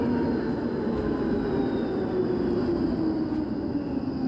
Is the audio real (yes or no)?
yes